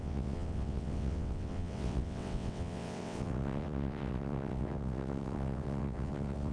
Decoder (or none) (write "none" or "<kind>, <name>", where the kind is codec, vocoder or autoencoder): vocoder, WaveNeXt